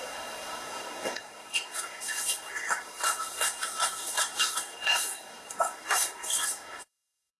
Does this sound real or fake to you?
fake